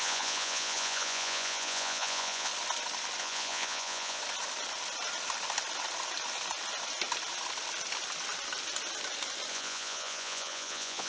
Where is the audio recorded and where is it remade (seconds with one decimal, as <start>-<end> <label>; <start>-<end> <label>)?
0.0-2.5 remade; 2.5-3.2 recorded; 3.2-4.2 remade; 4.2-9.5 recorded; 9.5-11.1 remade